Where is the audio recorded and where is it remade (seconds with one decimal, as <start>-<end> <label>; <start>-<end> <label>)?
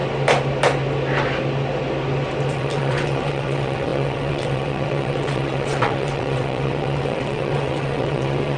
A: 0.0-2.5 recorded; 2.5-8.6 remade